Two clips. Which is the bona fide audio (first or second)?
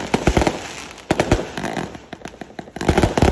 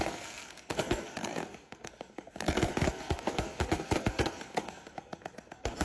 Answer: first